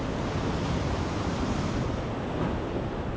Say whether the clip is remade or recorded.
recorded